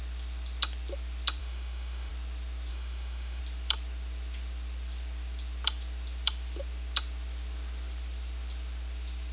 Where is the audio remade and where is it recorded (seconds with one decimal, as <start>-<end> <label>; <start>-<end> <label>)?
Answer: 0.0-1.4 recorded; 1.4-2.1 remade; 2.1-2.7 recorded; 2.7-3.4 remade; 3.4-9.3 recorded